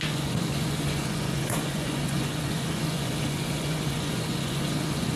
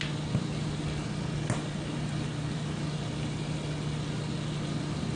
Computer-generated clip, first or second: first